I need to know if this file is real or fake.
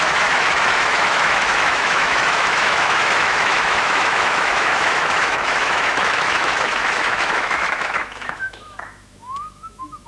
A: fake